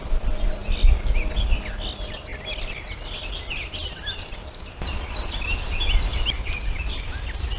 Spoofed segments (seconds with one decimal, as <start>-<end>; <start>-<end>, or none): none